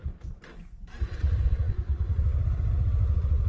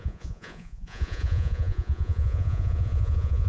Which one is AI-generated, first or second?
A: second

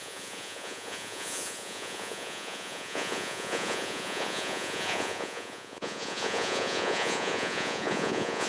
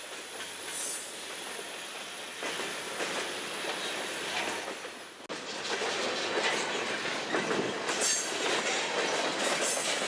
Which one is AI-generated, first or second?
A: first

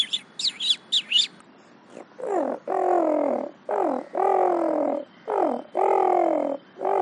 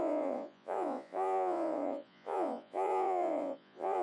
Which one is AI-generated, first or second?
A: second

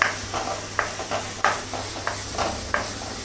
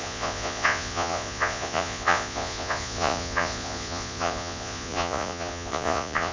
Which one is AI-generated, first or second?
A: second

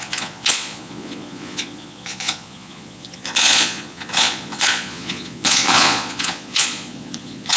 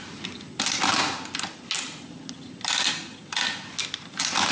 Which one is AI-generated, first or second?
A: first